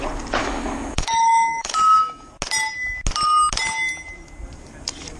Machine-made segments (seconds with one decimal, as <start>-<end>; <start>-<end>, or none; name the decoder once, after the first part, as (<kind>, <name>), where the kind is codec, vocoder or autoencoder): 0.4-2.3 (autoencoder, DAC-VAE)